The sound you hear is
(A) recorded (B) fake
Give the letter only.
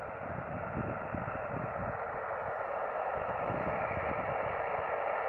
A